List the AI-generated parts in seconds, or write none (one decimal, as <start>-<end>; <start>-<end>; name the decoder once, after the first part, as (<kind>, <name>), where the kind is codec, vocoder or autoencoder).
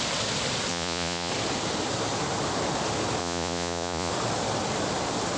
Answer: 0.7-1.3 (vocoder, Vocos); 3.2-4.1